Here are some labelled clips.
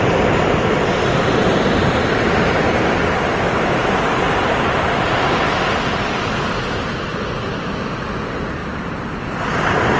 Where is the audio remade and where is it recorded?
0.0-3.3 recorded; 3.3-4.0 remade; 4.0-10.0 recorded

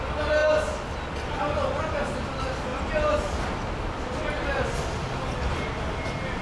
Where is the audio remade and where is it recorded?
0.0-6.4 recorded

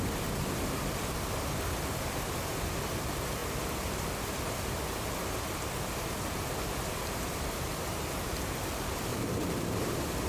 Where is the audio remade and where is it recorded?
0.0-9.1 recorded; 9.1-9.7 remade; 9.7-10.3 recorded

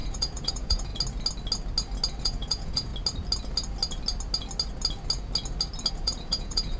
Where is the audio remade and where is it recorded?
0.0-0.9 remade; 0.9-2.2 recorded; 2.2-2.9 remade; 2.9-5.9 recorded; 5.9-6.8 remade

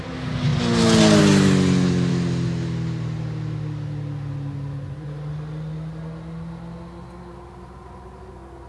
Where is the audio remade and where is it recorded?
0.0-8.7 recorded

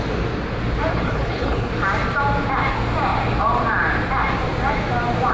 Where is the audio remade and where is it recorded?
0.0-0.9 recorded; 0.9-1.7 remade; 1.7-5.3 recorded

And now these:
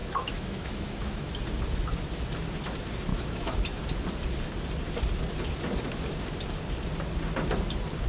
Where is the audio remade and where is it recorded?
0.0-1.4 remade; 1.4-3.1 recorded; 3.1-3.8 remade; 3.8-8.1 recorded